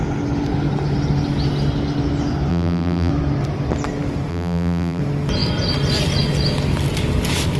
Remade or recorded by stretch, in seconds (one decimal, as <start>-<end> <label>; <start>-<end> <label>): 0.0-2.5 recorded; 2.5-3.1 remade; 3.1-4.3 recorded; 4.3-5.0 remade; 5.0-7.6 recorded

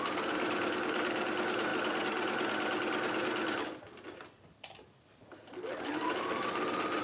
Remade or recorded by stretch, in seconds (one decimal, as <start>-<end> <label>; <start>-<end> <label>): 0.0-7.0 recorded